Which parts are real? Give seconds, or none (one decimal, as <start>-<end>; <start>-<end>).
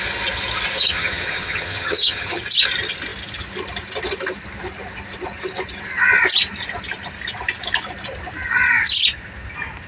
0.0-0.8; 2.4-9.9